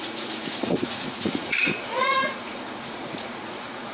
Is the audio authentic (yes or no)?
no